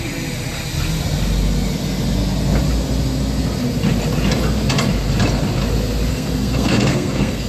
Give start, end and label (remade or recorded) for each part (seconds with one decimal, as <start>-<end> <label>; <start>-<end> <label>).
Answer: 0.0-6.1 recorded; 6.1-7.5 remade